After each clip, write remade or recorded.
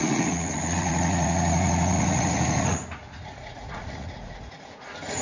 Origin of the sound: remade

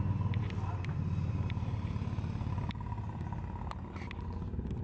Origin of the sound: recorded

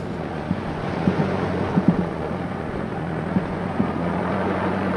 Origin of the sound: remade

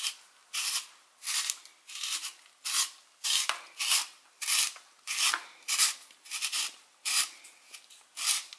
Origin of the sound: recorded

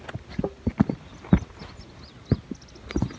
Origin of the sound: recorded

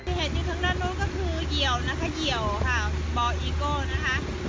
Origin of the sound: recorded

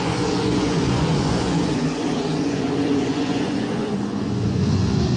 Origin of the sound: remade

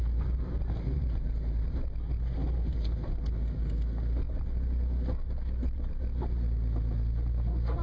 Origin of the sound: recorded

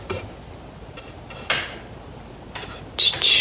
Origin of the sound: recorded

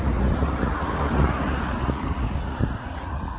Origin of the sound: remade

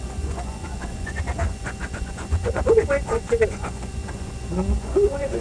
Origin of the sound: remade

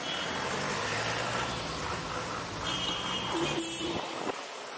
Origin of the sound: recorded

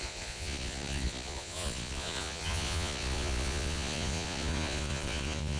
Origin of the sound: remade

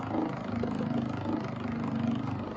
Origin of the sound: recorded